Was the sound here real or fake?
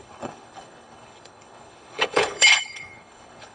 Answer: fake